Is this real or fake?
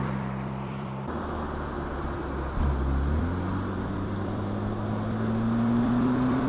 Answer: fake